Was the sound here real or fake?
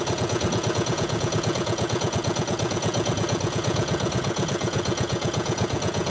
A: fake